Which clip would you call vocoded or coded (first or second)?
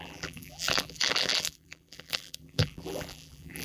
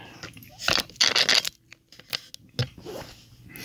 first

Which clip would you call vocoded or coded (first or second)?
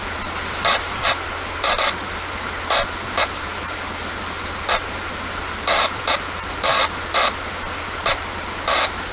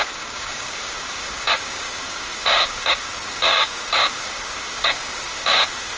second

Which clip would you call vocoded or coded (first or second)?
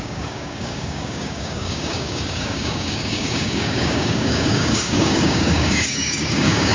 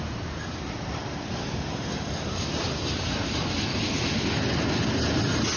first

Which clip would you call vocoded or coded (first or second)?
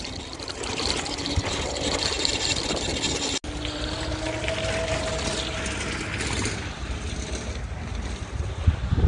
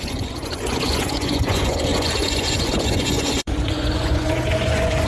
second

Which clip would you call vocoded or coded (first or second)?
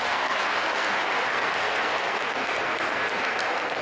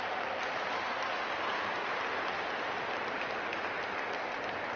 first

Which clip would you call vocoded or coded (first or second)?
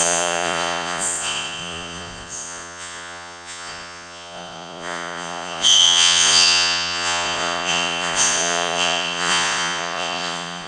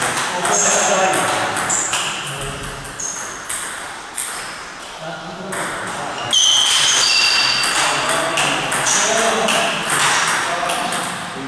first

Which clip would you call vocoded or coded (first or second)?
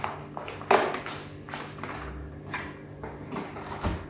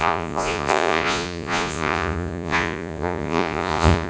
second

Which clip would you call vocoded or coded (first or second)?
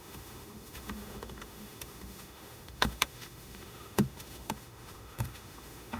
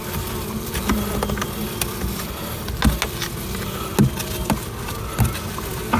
first